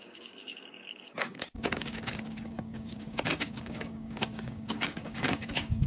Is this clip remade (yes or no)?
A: yes